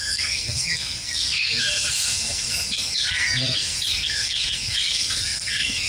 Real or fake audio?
fake